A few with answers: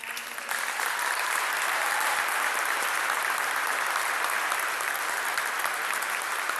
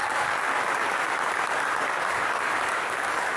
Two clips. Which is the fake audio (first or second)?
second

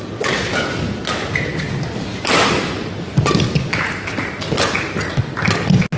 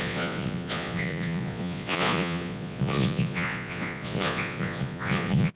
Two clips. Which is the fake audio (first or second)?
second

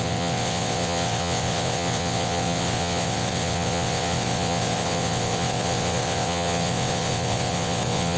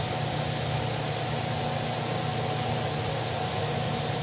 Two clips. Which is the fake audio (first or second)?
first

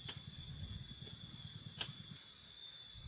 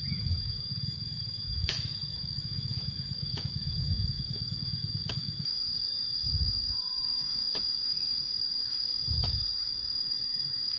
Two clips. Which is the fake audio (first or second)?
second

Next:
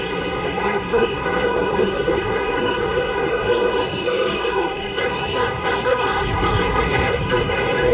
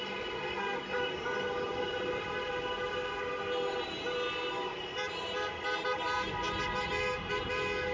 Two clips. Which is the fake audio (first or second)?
first